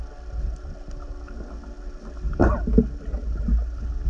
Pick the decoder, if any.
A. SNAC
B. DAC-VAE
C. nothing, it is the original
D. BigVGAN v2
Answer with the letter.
C